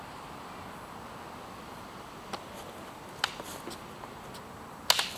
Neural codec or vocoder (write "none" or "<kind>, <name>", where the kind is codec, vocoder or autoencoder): none